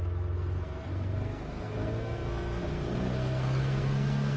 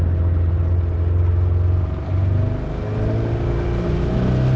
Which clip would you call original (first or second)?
second